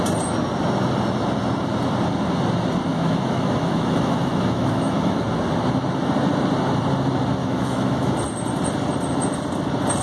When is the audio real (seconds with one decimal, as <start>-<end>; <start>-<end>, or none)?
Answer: 0.0-2.9; 5.2-7.4; 8.1-10.0